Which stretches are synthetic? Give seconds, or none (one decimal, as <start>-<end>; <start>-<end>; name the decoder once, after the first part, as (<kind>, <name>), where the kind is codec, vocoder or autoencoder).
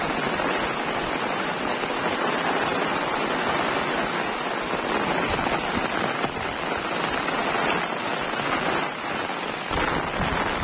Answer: none